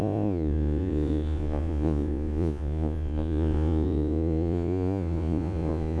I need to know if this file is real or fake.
fake